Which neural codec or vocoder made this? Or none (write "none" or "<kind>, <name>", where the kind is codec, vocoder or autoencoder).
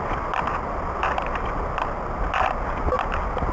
none